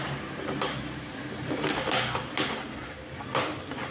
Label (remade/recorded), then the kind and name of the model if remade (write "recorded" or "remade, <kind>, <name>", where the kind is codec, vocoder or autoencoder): recorded